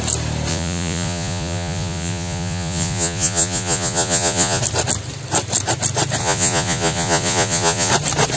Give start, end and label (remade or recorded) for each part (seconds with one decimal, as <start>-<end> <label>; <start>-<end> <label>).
0.0-0.5 recorded; 0.5-4.6 remade; 4.6-6.2 recorded; 6.2-7.9 remade; 7.9-8.4 recorded